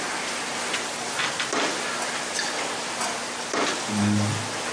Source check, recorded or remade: recorded